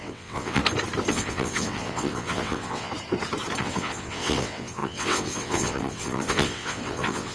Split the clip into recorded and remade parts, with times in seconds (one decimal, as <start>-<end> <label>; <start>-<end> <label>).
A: 0.0-0.6 remade; 0.6-1.1 recorded; 1.1-2.9 remade; 2.9-3.6 recorded; 3.6-7.3 remade